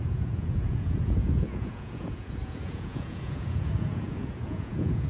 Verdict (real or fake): fake